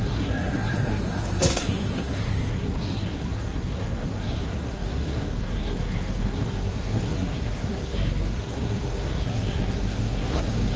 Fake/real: fake